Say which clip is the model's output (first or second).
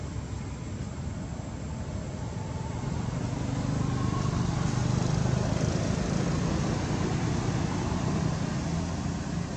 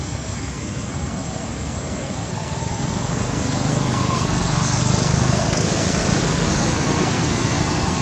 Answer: second